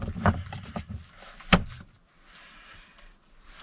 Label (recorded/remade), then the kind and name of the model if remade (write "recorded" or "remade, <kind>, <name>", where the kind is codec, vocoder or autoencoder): recorded